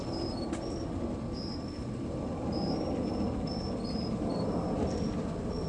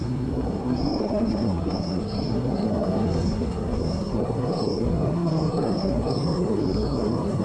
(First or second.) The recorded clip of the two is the first